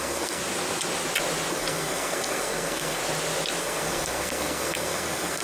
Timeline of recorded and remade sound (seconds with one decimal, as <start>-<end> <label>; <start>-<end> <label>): 0.0-0.4 remade; 0.4-1.5 recorded; 1.5-3.0 remade; 3.0-3.6 recorded; 3.6-5.4 remade